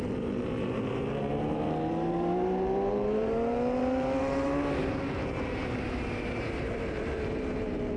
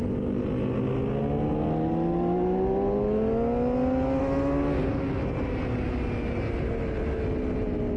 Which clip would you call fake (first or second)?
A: first